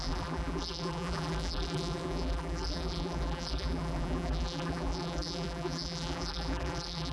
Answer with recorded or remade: remade